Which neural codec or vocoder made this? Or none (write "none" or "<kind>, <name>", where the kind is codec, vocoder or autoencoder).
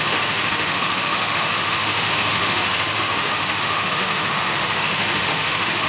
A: autoencoder, DAC-VAE